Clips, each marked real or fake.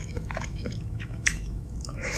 fake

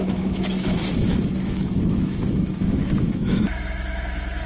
fake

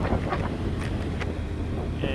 real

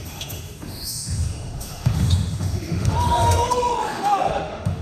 fake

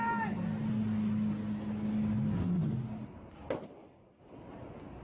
real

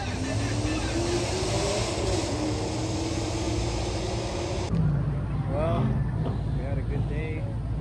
real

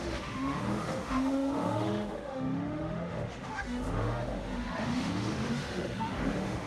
fake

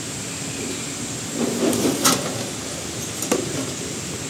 real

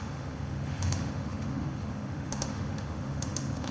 fake